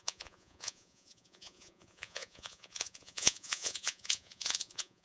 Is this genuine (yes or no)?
no